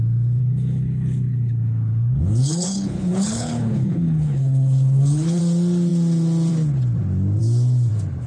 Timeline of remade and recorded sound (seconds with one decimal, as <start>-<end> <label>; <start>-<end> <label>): 0.0-0.4 recorded; 0.4-5.4 remade; 5.4-8.3 recorded